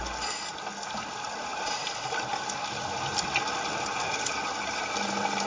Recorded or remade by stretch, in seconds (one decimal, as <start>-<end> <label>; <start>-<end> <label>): 0.0-5.5 recorded

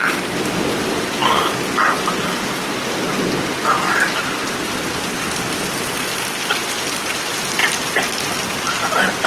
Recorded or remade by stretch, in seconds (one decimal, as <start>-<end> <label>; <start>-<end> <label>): 0.0-9.3 recorded

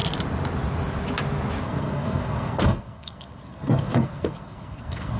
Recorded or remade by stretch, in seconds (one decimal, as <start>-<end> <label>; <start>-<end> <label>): 0.0-1.6 recorded; 1.6-5.2 remade

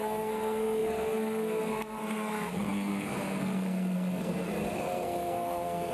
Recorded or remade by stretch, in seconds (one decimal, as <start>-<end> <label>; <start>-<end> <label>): 0.0-5.9 remade